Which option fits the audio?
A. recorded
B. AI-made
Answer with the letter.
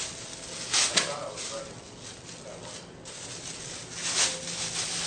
A